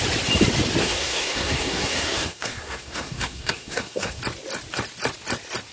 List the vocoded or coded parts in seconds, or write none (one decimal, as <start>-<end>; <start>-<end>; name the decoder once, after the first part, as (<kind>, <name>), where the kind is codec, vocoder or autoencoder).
0.8-4.2 (codec, SNAC)